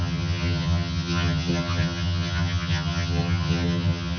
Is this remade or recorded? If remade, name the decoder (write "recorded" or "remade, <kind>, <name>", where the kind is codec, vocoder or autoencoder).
remade, vocoder, HiFi-GAN